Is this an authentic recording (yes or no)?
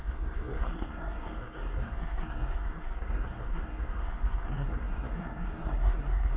no